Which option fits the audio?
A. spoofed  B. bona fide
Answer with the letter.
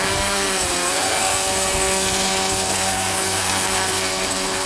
A